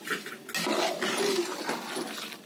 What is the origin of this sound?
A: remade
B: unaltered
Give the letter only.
B